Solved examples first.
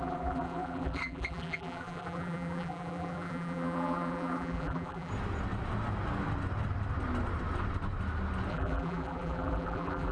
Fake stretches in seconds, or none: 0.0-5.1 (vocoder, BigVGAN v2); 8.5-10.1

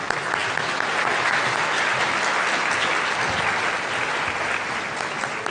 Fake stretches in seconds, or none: none